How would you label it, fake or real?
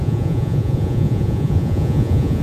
fake